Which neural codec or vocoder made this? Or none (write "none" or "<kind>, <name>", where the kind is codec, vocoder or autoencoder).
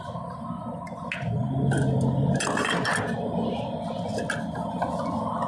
none